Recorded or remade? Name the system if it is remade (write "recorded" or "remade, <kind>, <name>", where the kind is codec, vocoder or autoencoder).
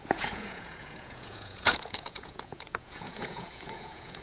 remade, vocoder, Vocos